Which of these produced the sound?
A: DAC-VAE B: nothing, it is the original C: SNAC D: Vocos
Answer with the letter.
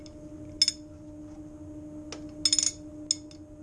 B